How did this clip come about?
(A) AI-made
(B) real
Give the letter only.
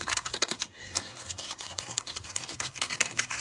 A